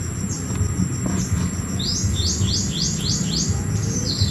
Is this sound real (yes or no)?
yes